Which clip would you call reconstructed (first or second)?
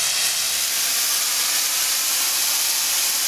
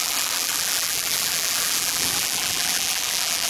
second